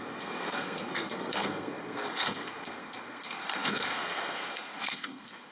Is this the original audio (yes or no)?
no